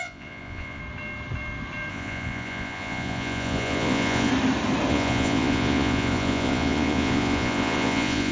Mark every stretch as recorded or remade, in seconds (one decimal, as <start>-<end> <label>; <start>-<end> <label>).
0.0-0.8 remade; 0.8-1.9 recorded; 1.9-4.3 remade; 4.3-4.9 recorded; 4.9-8.3 remade